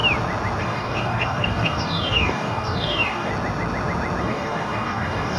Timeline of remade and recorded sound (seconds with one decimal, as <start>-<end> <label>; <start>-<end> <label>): 0.0-0.6 recorded; 0.6-3.3 remade; 3.3-4.2 recorded; 4.2-5.4 remade